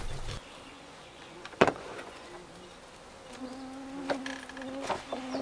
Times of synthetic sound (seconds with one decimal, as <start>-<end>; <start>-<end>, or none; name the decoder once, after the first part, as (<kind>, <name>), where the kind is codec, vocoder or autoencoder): 0.7-2.3 (vocoder, Vocos)